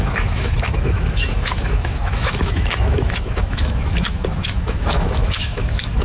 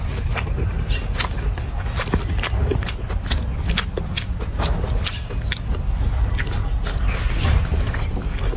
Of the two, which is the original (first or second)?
second